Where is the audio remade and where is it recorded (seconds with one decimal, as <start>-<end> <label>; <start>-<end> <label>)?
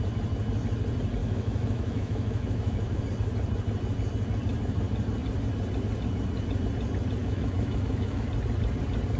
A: 0.0-1.2 recorded; 1.2-3.0 remade; 3.0-7.2 recorded; 7.2-8.3 remade; 8.3-9.2 recorded